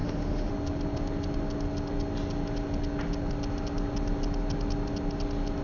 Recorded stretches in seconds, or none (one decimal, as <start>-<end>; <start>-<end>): 0.5-5.6